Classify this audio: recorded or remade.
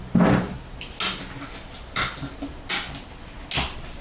recorded